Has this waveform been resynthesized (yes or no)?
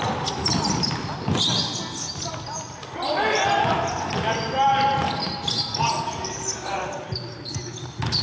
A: no